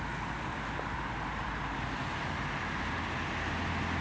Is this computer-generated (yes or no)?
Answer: no